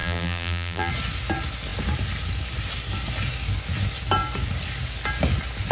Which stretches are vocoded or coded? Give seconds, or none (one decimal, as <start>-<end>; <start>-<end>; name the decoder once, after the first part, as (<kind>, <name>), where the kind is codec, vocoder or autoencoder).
0.0-0.9 (vocoder, BigVGAN v2)